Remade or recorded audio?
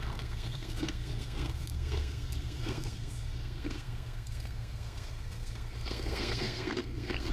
remade